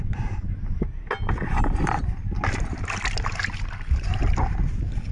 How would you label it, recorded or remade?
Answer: recorded